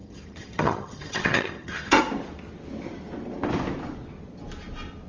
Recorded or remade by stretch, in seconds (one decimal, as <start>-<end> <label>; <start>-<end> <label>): 0.0-2.0 remade; 2.0-5.1 recorded